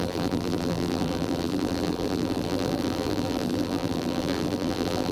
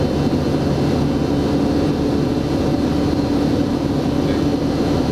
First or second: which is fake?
first